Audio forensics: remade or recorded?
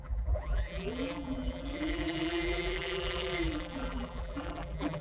remade